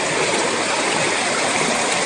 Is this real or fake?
fake